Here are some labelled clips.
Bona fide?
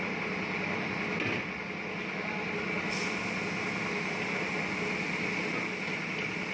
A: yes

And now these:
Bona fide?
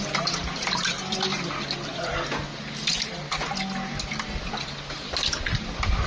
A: yes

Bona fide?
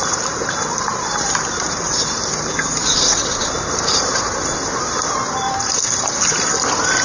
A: no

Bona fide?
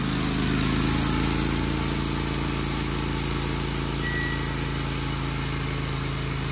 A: yes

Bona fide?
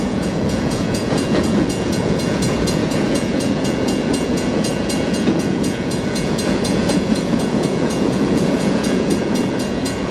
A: no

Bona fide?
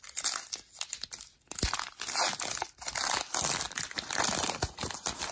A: yes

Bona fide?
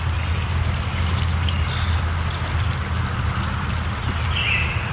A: yes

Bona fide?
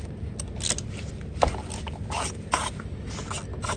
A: yes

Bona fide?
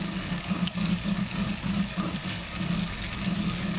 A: no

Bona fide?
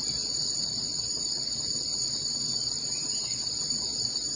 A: no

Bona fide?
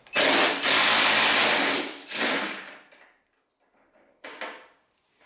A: yes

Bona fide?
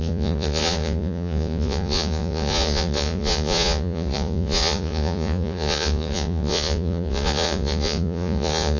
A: no